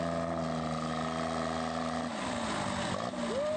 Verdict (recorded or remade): recorded